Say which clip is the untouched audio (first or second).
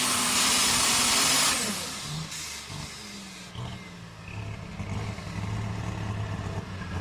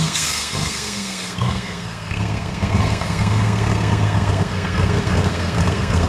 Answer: first